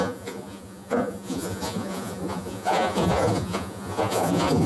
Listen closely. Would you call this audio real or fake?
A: fake